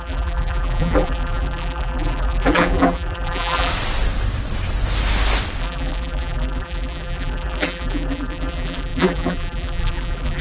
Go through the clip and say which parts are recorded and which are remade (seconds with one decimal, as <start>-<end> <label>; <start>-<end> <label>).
0.0-3.7 remade; 3.7-5.6 recorded; 5.6-10.4 remade